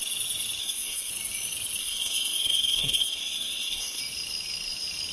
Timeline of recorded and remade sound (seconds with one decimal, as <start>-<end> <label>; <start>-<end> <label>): 0.0-0.6 recorded; 0.6-1.1 remade; 1.1-1.8 recorded; 1.8-4.0 remade; 4.0-5.1 recorded